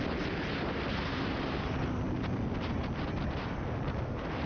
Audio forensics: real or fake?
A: real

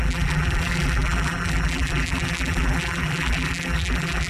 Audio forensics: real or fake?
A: fake